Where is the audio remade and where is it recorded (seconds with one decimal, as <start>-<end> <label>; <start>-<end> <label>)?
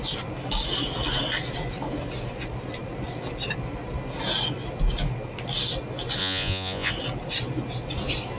0.0-6.2 recorded; 6.2-6.9 remade; 6.9-8.4 recorded